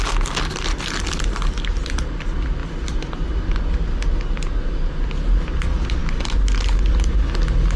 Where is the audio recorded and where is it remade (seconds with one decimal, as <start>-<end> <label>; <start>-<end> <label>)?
0.0-7.8 recorded